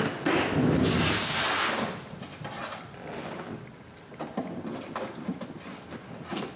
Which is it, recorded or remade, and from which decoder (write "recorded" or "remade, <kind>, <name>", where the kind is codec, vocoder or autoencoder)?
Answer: recorded